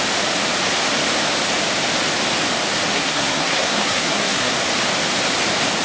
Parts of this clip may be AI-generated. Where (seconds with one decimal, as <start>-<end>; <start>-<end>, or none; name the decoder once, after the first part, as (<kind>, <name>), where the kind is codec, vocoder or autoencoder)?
2.9-4.5 (codec, SNAC)